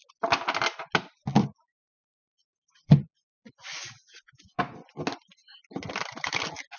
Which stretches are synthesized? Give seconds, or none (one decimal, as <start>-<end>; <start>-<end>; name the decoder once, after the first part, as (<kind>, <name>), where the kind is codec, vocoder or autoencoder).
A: 1.4-4.6 (vocoder, Vocos)